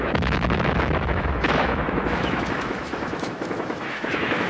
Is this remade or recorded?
remade